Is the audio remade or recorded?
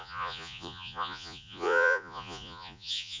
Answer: remade